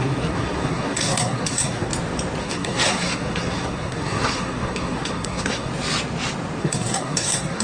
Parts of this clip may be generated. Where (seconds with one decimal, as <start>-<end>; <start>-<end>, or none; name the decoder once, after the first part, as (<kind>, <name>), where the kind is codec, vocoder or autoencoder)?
0.0-1.9 (codec, SNAC); 2.4-5.7; 6.6-7.6